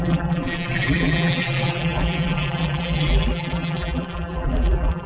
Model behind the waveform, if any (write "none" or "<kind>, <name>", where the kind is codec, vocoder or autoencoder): vocoder, BigVGAN v2